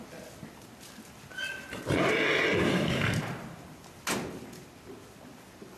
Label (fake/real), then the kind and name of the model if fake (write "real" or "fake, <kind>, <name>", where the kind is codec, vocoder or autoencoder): real